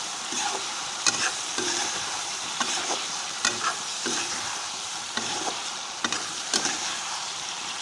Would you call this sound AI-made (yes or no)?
yes